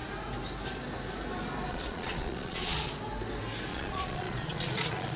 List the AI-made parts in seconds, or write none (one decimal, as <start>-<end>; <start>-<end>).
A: 1.7-2.9; 3.7-5.2